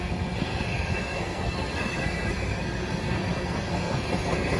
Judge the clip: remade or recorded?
remade